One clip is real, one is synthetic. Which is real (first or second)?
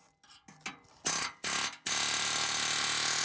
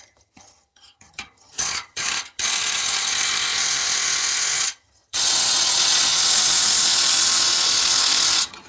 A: first